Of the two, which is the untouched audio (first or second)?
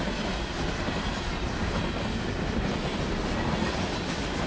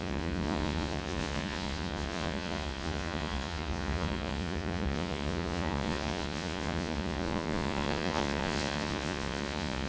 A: first